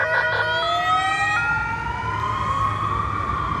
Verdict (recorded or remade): recorded